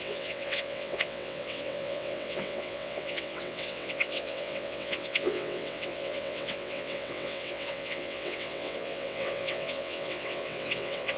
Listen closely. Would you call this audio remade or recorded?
remade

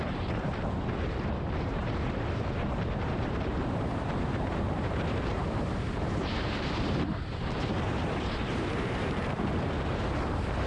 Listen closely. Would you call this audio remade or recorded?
remade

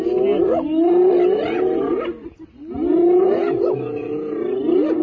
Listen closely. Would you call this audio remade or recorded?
recorded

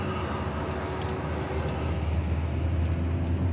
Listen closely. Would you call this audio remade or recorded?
recorded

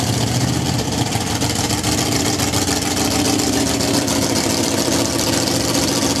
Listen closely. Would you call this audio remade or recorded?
remade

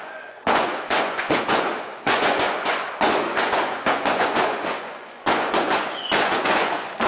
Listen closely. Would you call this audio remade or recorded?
remade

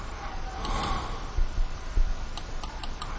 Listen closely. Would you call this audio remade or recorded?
recorded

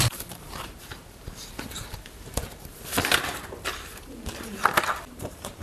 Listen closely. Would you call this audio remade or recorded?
remade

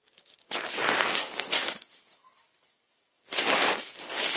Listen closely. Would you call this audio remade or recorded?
remade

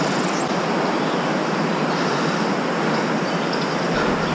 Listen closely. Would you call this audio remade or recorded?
recorded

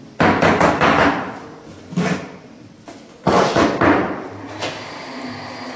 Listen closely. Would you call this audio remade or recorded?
recorded